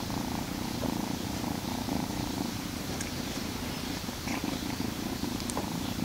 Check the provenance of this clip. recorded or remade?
remade